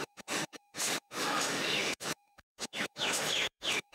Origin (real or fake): fake